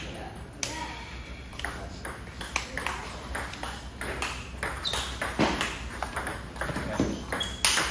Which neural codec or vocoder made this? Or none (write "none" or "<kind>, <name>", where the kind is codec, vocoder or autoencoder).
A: none